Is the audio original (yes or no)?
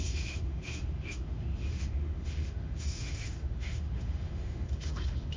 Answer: no